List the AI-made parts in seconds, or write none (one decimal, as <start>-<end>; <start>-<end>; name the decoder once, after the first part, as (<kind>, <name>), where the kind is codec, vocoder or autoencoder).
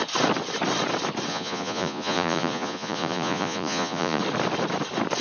1.3-4.2 (vocoder, Vocos)